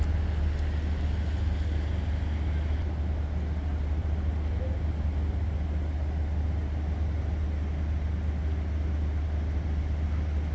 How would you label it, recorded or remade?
recorded